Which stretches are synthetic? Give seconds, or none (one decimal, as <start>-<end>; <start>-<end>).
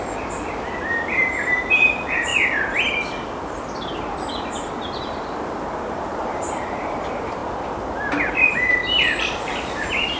0.0-2.3; 5.0-7.4; 8.3-10.2